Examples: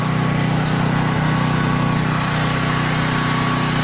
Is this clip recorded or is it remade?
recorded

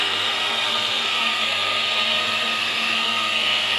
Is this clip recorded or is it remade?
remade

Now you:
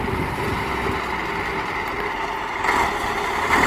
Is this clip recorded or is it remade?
remade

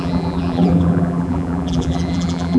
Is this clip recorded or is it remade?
remade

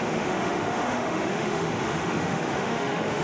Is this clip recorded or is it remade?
remade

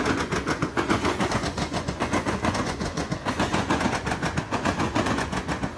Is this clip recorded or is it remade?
remade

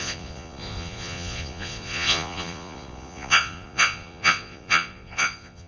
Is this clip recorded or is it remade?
remade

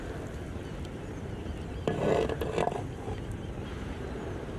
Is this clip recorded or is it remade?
remade